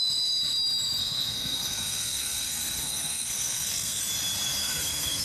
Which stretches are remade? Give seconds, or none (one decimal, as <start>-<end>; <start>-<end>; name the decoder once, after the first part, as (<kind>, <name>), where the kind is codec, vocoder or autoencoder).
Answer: 1.0-4.0 (codec, SNAC); 4.6-5.2